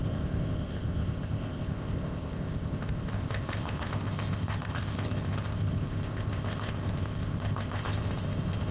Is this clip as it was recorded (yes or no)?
no